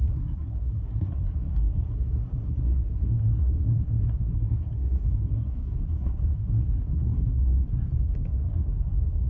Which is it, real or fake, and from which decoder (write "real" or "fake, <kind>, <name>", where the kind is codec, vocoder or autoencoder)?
fake, codec, SNAC